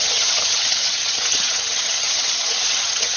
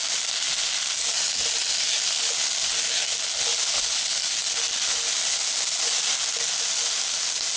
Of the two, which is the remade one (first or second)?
first